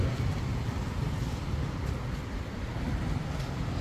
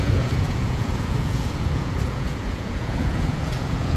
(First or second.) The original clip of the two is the first